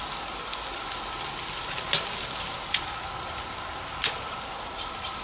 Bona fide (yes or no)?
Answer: yes